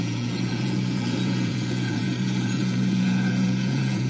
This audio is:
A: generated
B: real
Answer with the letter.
A